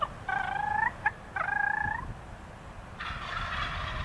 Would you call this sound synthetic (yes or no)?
no